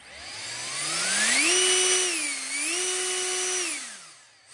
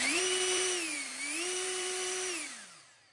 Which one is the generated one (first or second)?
second